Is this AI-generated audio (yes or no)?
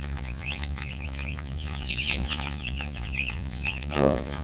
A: yes